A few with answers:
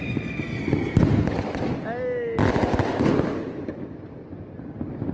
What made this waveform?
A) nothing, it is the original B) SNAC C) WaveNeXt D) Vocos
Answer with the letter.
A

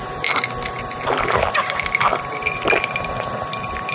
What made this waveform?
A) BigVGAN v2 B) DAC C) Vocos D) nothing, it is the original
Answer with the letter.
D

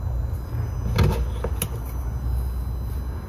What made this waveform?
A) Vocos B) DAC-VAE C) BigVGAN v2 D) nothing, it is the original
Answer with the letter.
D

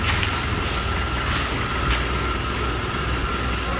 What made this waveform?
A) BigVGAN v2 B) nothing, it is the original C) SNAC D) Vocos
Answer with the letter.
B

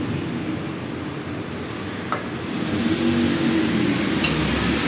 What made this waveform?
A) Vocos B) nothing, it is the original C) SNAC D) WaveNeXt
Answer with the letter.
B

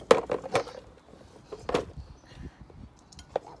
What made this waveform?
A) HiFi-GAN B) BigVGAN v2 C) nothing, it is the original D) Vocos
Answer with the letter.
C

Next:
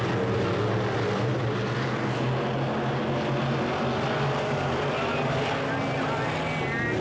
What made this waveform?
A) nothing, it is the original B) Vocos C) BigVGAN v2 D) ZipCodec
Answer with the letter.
A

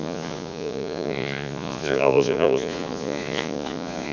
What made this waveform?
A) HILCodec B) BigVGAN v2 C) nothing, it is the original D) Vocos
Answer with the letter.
D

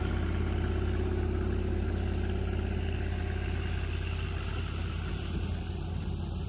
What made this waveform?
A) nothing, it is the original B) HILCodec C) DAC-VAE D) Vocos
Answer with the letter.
A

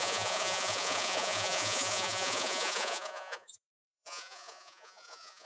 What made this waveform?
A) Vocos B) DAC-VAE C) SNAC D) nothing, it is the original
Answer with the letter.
A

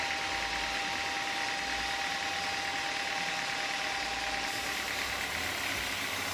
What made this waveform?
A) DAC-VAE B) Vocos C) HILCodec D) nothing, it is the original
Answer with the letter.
D